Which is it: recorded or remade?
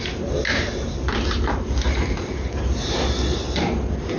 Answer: recorded